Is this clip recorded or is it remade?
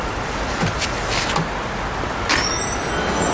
recorded